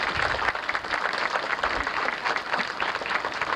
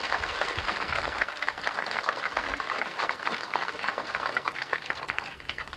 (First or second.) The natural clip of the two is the first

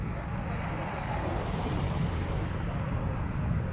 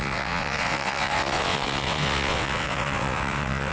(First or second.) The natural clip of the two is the first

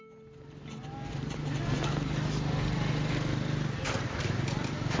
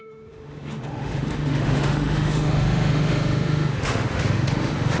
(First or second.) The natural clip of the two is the first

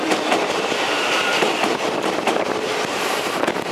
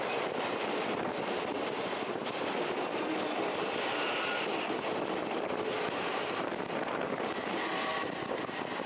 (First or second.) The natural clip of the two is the second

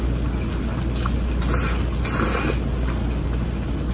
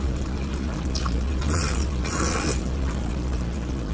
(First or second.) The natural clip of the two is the first